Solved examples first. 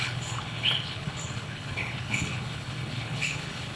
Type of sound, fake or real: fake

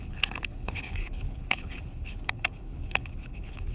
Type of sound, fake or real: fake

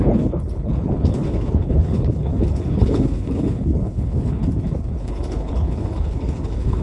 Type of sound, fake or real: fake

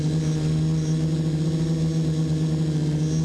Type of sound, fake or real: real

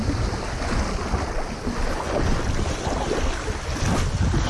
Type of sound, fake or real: real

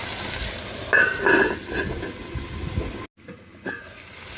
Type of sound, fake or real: real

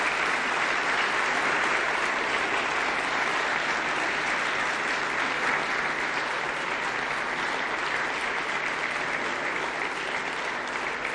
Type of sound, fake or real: real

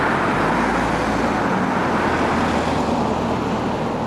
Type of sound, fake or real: real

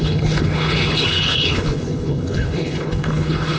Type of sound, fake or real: fake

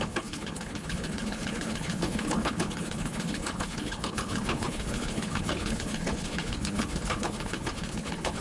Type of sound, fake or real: fake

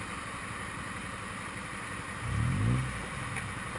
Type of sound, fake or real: real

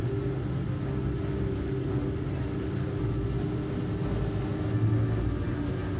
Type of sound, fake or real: real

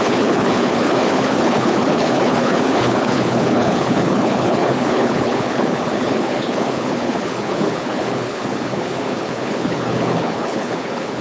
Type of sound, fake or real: fake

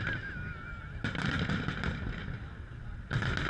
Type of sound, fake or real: real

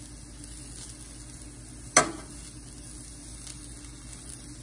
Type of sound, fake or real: real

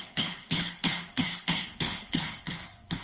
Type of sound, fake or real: fake